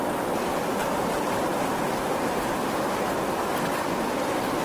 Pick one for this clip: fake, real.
real